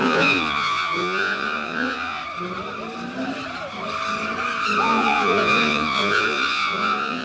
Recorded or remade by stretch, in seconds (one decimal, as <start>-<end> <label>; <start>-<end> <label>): 0.0-2.2 remade; 2.2-4.8 recorded; 4.8-7.2 remade